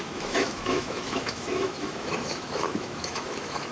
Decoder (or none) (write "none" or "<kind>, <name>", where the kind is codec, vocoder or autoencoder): autoencoder, DAC-VAE